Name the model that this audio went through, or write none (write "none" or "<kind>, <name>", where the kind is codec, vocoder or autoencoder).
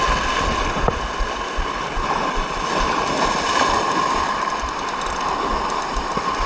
none